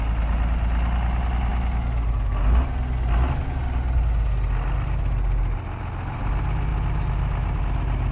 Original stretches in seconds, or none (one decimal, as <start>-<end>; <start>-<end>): 0.0-8.1